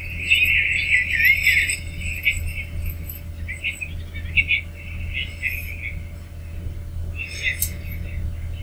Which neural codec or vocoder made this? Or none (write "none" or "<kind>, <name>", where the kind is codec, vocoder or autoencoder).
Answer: none